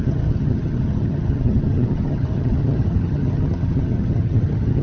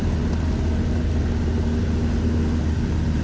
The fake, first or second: first